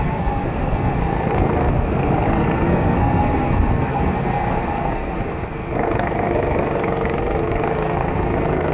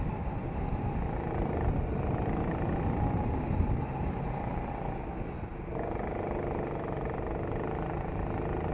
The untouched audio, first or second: second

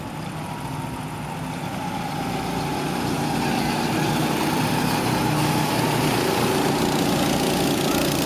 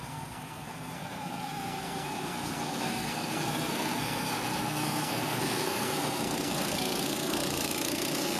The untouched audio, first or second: first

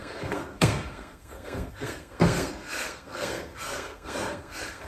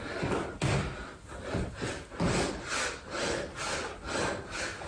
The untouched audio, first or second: second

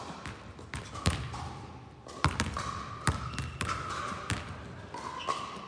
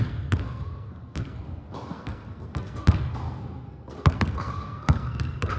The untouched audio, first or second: first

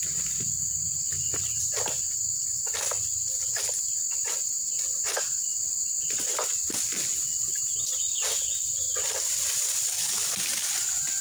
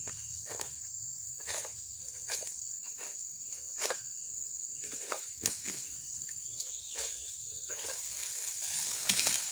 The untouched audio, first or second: first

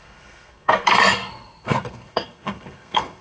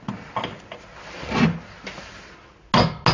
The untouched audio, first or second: second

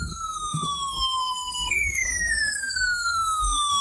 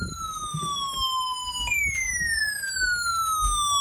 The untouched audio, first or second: second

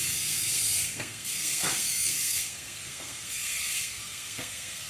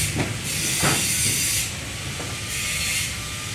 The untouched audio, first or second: second